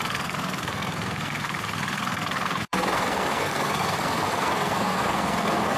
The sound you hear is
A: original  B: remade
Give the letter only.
B